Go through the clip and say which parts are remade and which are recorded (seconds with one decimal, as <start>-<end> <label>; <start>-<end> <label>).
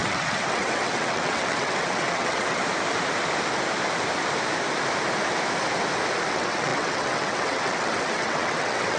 0.0-2.6 remade; 2.6-6.3 recorded; 6.3-9.0 remade